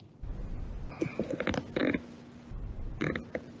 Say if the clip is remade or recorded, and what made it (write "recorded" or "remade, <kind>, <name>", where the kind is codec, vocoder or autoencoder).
recorded